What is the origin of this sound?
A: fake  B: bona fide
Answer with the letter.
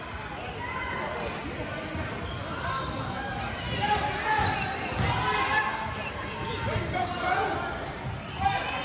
B